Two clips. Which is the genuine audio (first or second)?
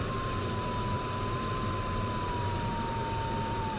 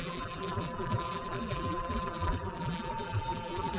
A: first